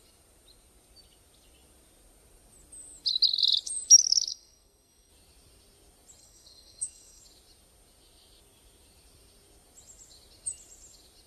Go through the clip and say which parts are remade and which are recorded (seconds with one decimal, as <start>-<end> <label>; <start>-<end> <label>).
0.0-4.3 recorded; 4.3-5.1 remade; 5.1-6.2 recorded; 6.2-7.2 remade; 7.2-11.3 recorded